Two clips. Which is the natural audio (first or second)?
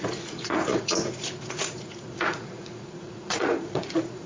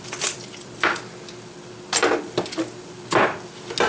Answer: second